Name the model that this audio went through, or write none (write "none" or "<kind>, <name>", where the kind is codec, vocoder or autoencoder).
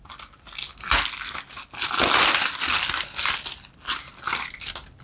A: none